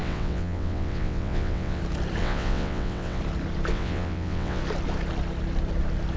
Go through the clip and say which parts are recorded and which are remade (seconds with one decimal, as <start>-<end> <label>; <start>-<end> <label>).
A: 0.0-1.8 remade; 1.8-2.2 recorded; 2.2-3.2 remade; 3.2-3.7 recorded; 3.7-4.6 remade; 4.6-6.2 recorded

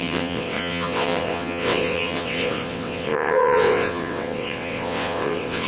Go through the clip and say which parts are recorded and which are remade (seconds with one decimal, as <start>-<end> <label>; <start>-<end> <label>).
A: 0.0-5.7 remade

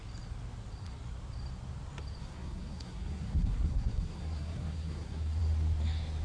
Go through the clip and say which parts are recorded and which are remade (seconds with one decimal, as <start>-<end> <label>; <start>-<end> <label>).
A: 0.0-2.2 recorded; 2.2-5.4 remade; 5.4-6.2 recorded

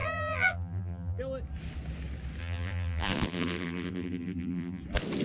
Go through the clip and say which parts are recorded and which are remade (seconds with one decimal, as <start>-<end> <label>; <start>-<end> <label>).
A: 0.0-1.2 remade; 1.2-2.4 recorded; 2.4-4.8 remade; 4.8-5.2 recorded

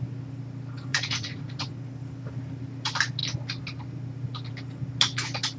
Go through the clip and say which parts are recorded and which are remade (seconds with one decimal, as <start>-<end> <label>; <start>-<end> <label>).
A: 0.0-0.9 recorded; 0.9-1.7 remade; 1.7-5.6 recorded

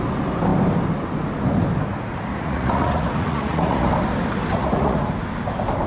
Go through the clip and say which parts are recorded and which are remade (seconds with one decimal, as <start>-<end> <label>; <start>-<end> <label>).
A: 0.0-2.3 recorded; 2.3-3.9 remade; 3.9-4.5 recorded; 4.5-5.1 remade; 5.1-5.9 recorded

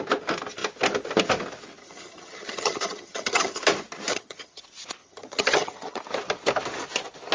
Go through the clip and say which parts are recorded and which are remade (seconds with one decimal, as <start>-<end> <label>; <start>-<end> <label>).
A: 0.0-1.8 recorded; 1.8-3.6 remade; 3.6-4.1 recorded; 4.1-4.6 remade; 4.6-5.0 recorded; 5.0-6.0 remade; 6.0-7.3 recorded

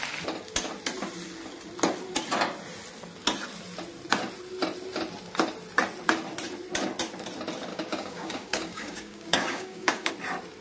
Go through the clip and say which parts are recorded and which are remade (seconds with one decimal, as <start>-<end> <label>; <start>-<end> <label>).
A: 0.0-7.7 recorded; 7.7-10.1 remade; 10.1-10.6 recorded